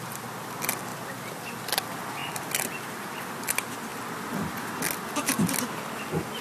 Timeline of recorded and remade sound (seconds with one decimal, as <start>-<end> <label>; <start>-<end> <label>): 0.0-6.4 recorded